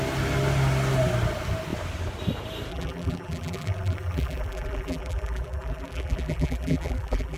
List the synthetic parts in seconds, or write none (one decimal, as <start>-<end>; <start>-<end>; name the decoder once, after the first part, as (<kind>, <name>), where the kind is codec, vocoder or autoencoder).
2.7-7.4 (vocoder, BigVGAN v2)